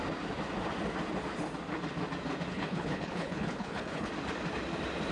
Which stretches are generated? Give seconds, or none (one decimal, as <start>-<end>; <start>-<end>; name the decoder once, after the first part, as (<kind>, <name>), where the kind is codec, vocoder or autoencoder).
2.5-4.1 (codec, HILCodec)

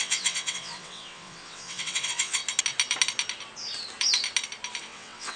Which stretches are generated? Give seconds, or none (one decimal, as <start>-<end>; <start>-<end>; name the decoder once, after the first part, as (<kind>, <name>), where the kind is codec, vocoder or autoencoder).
0.0-2.4 (vocoder, WaveNeXt); 4.8-5.4

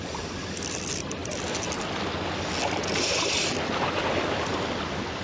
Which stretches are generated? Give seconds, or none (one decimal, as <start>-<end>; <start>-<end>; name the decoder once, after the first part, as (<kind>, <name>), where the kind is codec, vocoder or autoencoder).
none

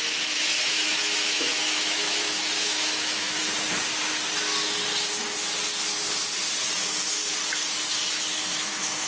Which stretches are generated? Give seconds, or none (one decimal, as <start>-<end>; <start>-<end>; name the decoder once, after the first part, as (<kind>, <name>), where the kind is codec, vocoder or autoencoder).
0.0-3.4 (autoencoder, DAC-VAE); 6.8-7.2; 8.1-9.1

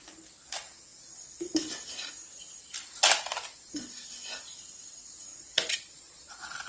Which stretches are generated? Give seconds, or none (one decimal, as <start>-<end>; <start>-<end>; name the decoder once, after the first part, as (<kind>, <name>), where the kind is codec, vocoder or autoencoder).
5.3-6.3 (vocoder, Vocos)

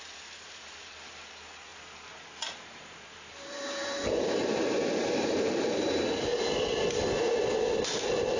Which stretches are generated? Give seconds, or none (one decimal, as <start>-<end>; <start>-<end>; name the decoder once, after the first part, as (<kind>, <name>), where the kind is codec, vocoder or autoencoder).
0.0-6.3 (vocoder, BigVGAN v2); 7.5-8.4

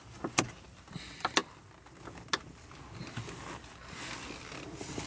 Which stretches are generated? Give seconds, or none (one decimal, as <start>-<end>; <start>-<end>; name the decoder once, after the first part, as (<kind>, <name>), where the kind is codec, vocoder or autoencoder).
none